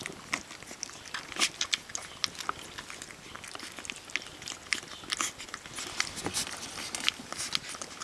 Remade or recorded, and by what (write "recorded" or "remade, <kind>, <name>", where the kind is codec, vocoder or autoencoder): recorded